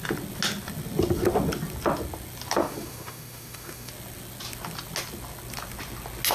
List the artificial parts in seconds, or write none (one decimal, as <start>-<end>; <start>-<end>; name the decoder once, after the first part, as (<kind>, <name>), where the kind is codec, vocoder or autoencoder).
2.6-3.9 (autoencoder, DAC-VAE)